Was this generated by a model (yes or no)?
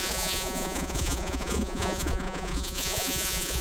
yes